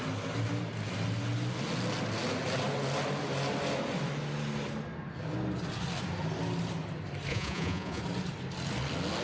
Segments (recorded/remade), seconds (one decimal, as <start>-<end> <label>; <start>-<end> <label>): 0.0-7.3 recorded; 7.3-8.0 remade; 8.0-9.2 recorded